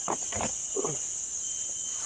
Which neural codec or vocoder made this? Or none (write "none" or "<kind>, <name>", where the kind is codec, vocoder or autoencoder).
none